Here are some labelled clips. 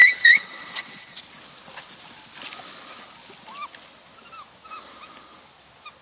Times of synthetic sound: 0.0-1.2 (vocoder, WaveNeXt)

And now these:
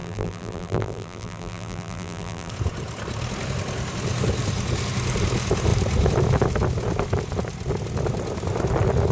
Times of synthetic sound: 0.0-2.5 (vocoder, BigVGAN v2)

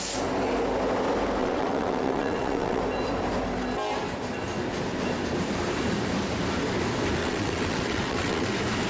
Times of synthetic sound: 1.4-2.8 (vocoder, WaveNeXt); 7.2-8.5

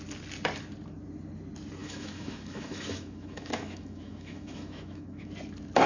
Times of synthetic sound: 1.8-5.3 (autoencoder, DAC-VAE)

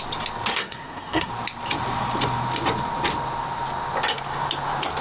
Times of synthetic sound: 0.5-1.3 (codec, SNAC)

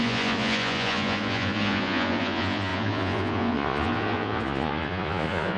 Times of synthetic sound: 0.0-5.6 (vocoder, Vocos)